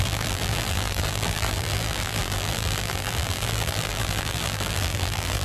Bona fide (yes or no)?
no